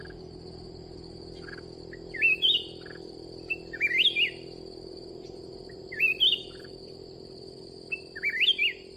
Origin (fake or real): real